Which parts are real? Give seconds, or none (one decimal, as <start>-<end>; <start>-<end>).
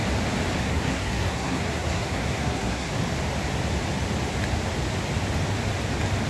0.0-0.6; 2.9-6.3